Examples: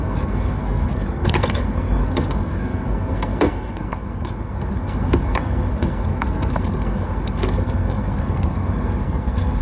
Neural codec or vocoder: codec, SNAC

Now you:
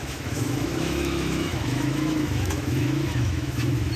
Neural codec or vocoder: autoencoder, DAC-VAE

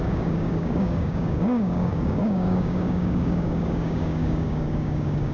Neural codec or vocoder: codec, DAC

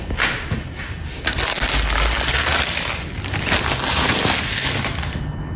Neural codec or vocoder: none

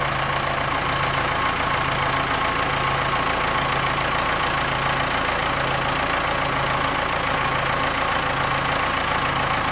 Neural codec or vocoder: none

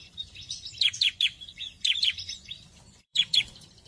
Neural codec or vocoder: vocoder, Vocos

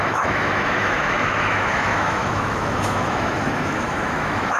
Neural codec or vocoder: autoencoder, DAC-VAE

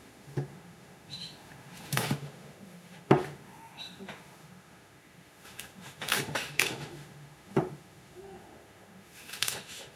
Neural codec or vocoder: autoencoder, DAC-VAE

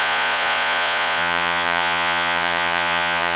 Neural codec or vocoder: vocoder, Vocos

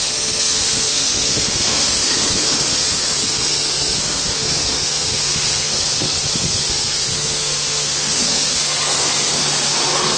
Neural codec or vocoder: codec, SNAC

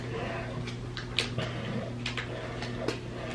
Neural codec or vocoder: none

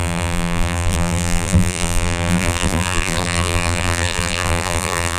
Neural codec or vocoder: vocoder, BigVGAN v2